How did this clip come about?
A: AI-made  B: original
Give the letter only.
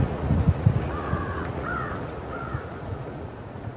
A